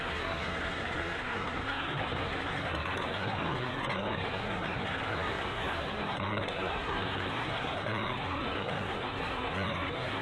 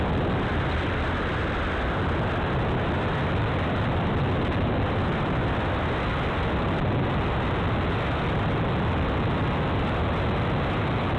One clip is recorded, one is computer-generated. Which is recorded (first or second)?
second